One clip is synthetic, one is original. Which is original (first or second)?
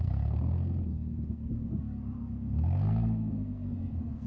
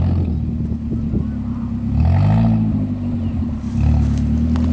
second